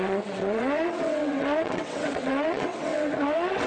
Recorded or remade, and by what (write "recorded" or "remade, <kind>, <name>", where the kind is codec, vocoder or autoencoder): remade, vocoder, WaveNeXt